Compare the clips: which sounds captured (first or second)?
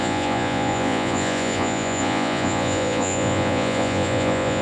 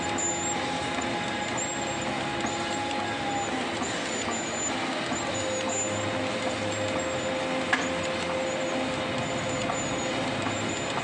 second